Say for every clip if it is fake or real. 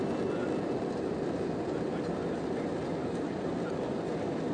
real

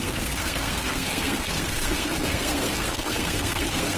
fake